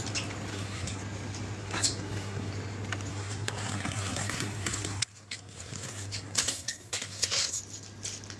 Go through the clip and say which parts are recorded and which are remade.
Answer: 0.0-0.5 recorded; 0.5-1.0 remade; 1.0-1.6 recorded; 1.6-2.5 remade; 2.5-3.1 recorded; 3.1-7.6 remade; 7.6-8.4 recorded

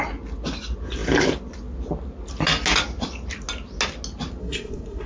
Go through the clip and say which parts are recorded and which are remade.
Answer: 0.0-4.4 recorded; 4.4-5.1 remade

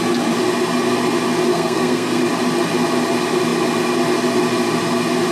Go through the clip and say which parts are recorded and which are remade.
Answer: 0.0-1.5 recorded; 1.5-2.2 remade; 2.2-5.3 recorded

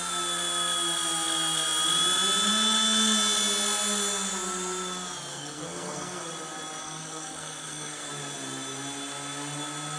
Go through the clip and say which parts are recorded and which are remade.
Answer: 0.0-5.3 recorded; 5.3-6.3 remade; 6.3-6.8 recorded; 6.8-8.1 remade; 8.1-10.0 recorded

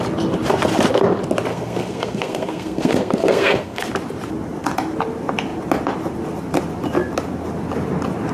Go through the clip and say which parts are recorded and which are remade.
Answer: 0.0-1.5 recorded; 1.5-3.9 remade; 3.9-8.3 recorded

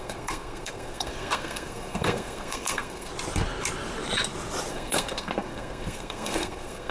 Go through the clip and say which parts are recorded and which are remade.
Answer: 0.0-3.1 remade; 3.1-4.7 recorded; 4.7-6.9 remade